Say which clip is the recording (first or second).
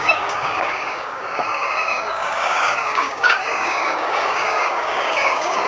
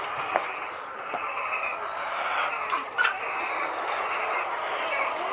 second